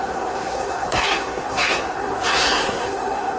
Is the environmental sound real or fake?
fake